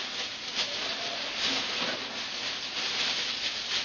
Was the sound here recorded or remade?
recorded